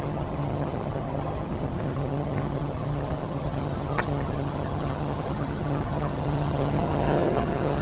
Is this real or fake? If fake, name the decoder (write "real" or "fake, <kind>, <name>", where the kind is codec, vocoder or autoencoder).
fake, vocoder, HiFi-GAN